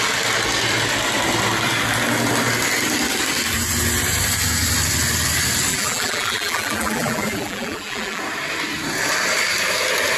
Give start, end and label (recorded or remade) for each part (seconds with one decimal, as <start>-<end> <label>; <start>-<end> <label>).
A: 0.0-5.7 recorded; 5.7-8.2 remade; 8.2-10.2 recorded